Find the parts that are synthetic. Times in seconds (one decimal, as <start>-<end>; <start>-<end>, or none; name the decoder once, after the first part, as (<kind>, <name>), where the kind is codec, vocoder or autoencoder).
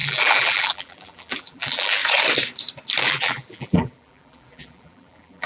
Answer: 0.0-2.0 (vocoder, BigVGAN v2); 3.0-5.5